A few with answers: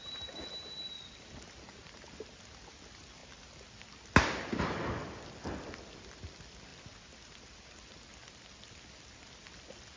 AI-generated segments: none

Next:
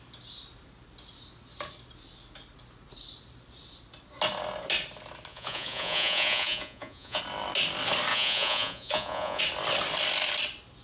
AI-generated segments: 5.3-7.2 (vocoder, Vocos); 8.1-9.4

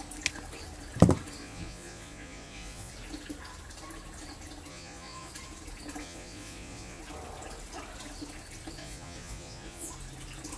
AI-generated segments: 1.4-2.9 (vocoder, Vocos); 4.7-5.3; 6.0-7.0; 8.8-9.9

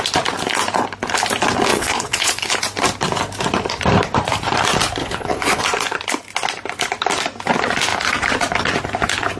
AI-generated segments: 1.7-2.5 (vocoder, Vocos); 5.0-5.6